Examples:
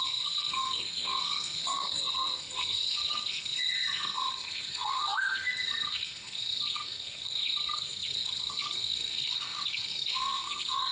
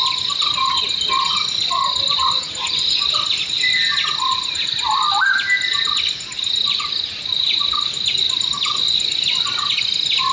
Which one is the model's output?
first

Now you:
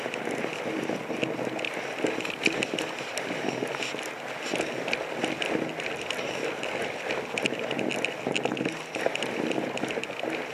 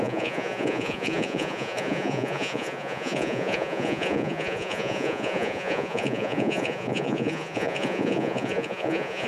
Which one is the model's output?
second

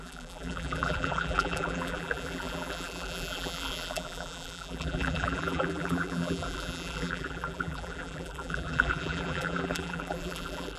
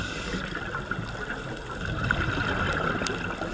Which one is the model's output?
first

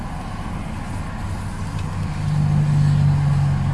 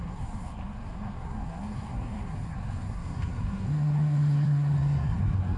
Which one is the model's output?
second